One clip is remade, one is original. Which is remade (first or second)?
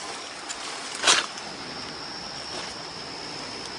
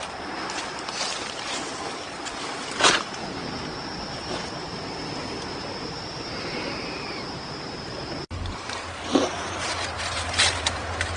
second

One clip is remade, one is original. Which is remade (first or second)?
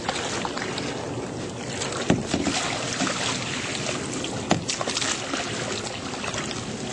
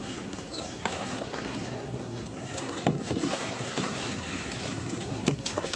second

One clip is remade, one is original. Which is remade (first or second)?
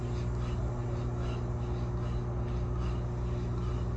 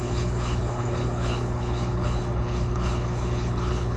second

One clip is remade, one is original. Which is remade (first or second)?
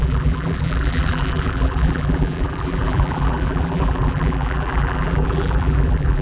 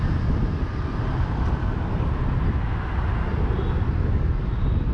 first